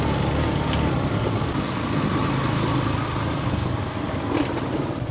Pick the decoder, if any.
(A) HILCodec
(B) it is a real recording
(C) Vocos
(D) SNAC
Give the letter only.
B